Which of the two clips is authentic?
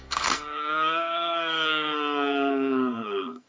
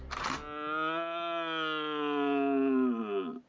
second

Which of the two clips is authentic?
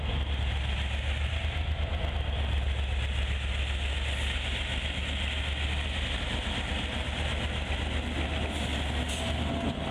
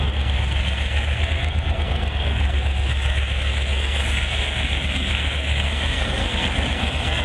first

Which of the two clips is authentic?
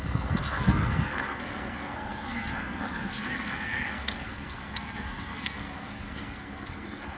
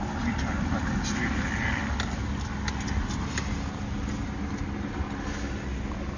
second